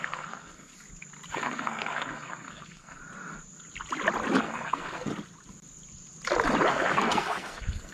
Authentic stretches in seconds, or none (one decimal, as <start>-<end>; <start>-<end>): 0.7-1.3; 3.0-4.4; 5.1-6.7